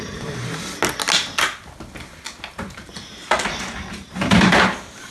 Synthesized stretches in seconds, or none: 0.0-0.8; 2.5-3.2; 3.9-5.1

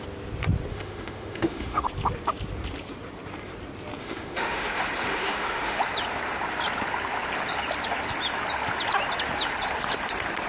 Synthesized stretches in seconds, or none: 0.7-1.9; 4.0-5.8

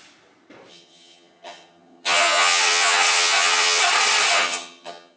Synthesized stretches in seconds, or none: 0.7-3.8; 4.3-5.2

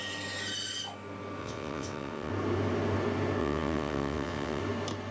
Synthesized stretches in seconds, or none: 1.4-2.3; 3.4-4.6

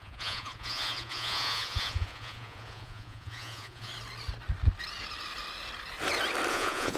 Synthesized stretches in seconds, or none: 0.0-3.9; 6.5-7.0

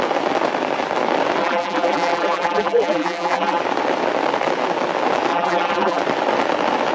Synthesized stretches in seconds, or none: 1.4-3.6; 5.3-6.0

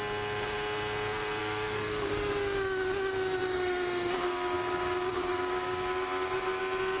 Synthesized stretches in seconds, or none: 1.4-2.1; 3.4-6.6